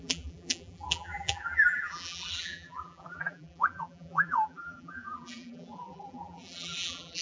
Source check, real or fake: fake